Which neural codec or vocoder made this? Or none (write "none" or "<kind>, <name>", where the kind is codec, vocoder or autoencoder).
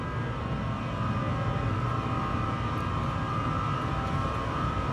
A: none